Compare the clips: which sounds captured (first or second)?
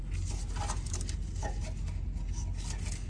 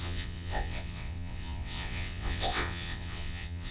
first